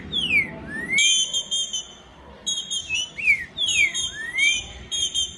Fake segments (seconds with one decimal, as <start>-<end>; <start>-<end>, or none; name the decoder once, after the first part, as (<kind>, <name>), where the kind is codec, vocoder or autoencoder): 2.1-5.4 (vocoder, BigVGAN v2)